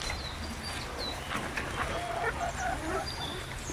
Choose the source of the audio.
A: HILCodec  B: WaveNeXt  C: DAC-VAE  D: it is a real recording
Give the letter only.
D